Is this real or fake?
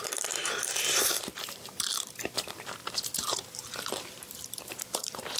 fake